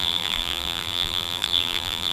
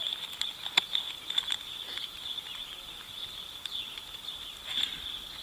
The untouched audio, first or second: second